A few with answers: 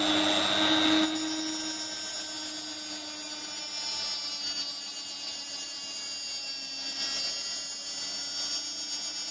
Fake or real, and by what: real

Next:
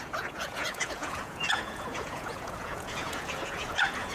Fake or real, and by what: fake, vocoder, Vocos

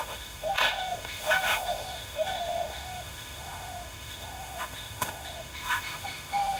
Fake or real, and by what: fake, autoencoder, DAC-VAE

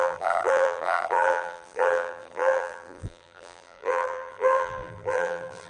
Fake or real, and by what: fake, vocoder, BigVGAN v2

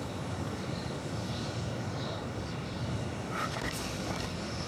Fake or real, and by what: fake, codec, DAC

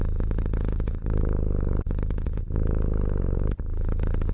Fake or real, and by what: real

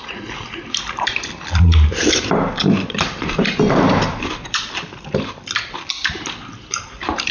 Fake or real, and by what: fake, vocoder, BigVGAN v2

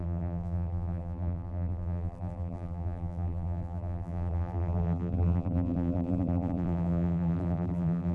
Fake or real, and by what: fake, vocoder, BigVGAN v2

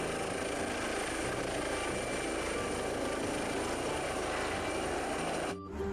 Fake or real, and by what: real